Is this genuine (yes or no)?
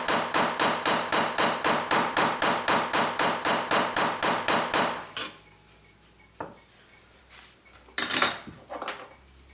no